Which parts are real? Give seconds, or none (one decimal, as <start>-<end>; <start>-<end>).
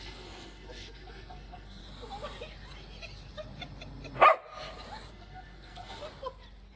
1.8-5.1; 6.0-6.8